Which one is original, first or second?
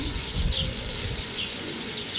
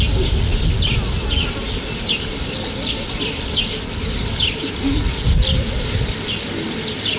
second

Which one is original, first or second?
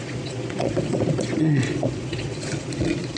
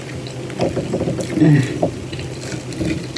second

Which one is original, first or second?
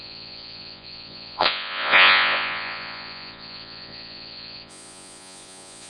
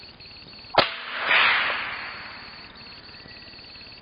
second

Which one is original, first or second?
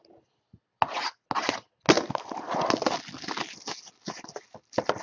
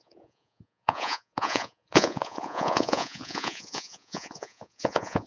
first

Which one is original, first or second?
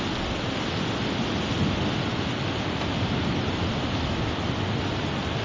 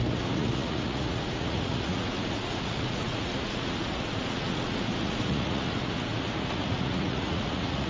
first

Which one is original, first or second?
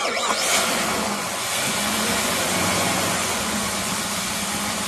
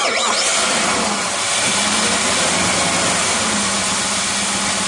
second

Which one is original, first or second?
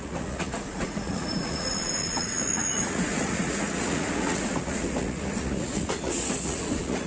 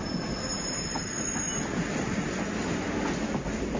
second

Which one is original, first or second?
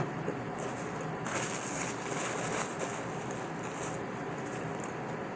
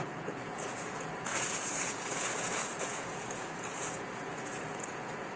first